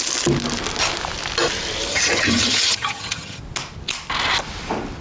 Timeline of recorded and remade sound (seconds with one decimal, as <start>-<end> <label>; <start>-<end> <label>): 0.0-1.9 recorded; 1.9-3.4 remade; 3.4-5.0 recorded